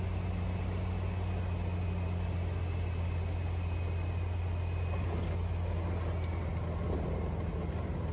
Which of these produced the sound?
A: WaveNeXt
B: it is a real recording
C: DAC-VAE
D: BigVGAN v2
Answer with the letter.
B